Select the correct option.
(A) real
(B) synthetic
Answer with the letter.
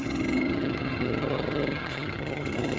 B